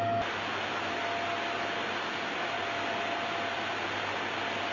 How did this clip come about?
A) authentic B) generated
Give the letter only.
A